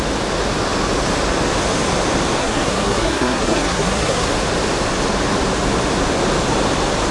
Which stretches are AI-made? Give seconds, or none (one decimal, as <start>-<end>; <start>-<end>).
2.4-4.3